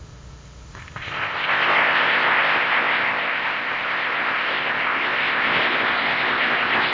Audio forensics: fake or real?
fake